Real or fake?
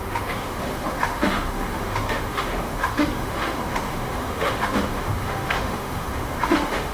fake